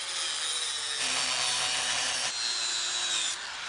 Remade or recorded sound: recorded